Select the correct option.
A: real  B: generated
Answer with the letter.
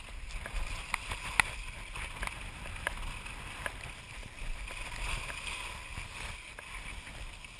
A